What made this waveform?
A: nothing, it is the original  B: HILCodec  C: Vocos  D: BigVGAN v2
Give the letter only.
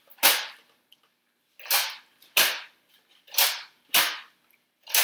A